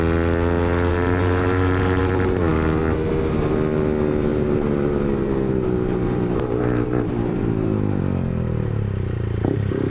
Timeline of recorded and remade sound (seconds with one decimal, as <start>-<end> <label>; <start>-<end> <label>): 0.0-0.9 recorded; 0.9-2.0 remade; 2.0-4.3 recorded; 4.3-8.0 remade; 8.0-9.9 recorded